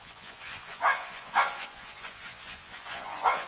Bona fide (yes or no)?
no